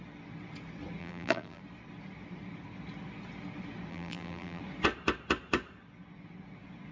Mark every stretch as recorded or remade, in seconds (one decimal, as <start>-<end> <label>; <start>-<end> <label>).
0.0-1.0 recorded; 1.0-1.6 remade; 1.6-3.9 recorded; 3.9-4.6 remade; 4.6-6.9 recorded